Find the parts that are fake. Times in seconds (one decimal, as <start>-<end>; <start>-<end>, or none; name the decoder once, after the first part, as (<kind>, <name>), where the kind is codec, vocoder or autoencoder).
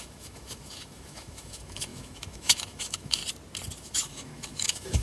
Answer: 0.0-3.2 (autoencoder, DAC-VAE); 3.8-5.0